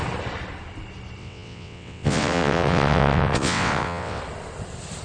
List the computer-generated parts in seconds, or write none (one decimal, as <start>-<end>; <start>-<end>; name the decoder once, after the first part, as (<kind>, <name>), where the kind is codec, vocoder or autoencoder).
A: 1.2-4.2 (vocoder, WaveNeXt)